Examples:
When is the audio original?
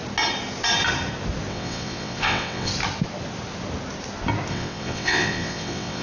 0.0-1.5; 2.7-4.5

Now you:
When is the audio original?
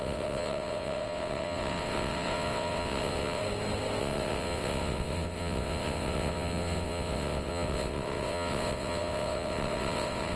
3.4-4.0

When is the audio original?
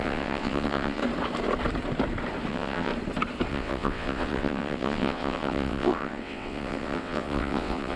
1.0-2.5; 2.9-3.5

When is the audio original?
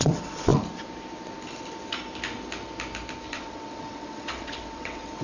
0.5-3.3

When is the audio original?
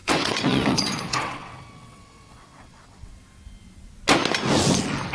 3.1-5.1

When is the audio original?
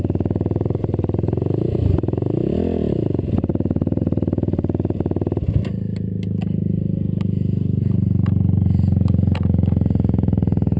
0.0-10.8